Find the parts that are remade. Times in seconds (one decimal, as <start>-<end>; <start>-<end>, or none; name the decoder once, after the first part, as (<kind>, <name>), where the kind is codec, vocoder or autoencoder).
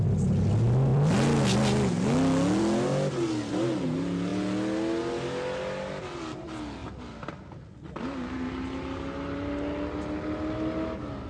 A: none